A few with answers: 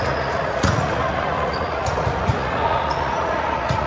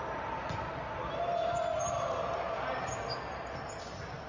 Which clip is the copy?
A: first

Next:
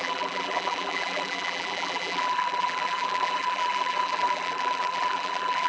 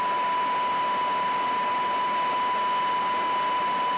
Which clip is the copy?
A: first